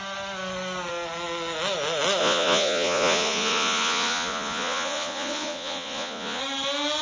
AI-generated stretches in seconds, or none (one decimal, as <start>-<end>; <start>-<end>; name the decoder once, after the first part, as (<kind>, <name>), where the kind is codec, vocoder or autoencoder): 2.2-6.4 (vocoder, Vocos)